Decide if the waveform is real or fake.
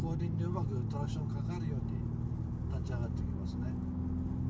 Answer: real